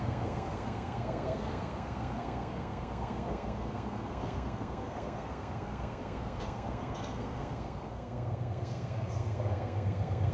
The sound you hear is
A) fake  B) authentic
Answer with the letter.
A